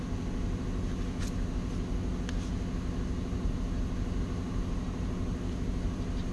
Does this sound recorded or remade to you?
recorded